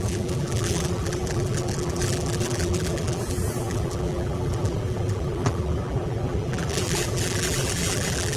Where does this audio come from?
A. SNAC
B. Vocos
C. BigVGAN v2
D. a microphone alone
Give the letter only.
C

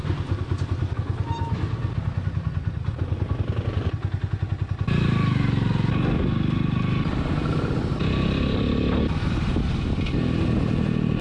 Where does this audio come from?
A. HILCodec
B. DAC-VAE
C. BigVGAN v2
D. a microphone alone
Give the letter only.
D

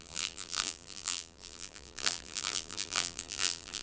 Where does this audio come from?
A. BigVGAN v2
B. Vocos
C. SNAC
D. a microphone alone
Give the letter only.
A